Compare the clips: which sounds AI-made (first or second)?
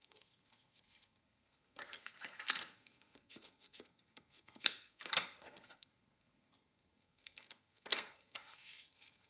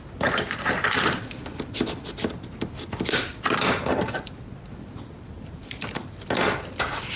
first